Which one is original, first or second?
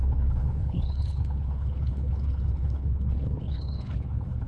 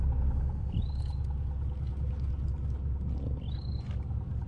second